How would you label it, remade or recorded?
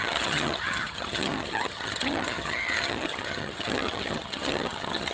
remade